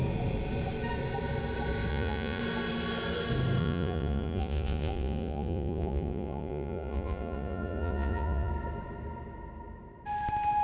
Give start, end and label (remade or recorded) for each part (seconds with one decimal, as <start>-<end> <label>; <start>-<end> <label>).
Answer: 0.0-1.9 recorded; 1.9-2.4 remade; 2.4-3.6 recorded; 3.6-8.5 remade; 8.5-10.6 recorded